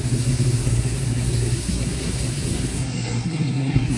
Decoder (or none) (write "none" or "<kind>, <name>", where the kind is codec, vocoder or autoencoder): codec, SNAC